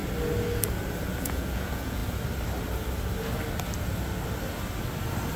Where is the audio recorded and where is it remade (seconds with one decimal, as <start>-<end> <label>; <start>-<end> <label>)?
0.0-1.2 recorded; 1.2-2.0 remade; 2.0-5.4 recorded